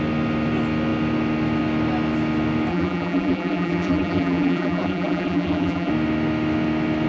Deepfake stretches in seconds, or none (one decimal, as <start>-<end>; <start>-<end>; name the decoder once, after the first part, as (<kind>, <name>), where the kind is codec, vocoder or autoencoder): 2.7-5.9 (vocoder, BigVGAN v2)